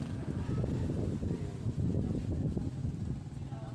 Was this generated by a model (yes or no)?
no